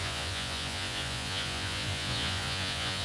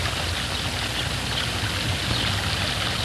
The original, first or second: second